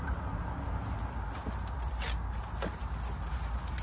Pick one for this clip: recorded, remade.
recorded